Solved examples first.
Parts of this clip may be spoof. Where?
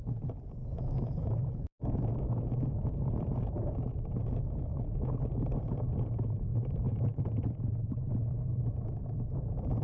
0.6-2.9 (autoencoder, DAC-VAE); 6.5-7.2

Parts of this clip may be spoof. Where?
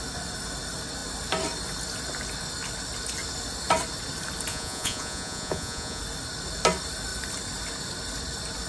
4.5-6.0 (vocoder, Vocos)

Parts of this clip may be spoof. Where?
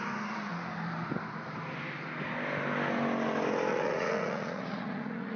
3.7-5.4 (vocoder, Vocos)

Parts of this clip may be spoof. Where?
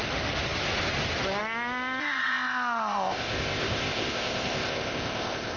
2.0-5.6 (codec, ZipCodec)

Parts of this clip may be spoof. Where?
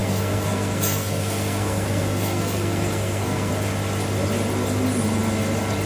0.0-3.5 (codec, SNAC)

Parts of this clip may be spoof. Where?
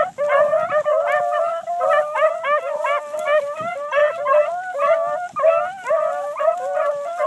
none